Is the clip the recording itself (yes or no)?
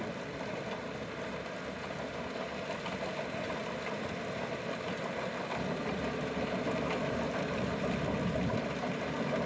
yes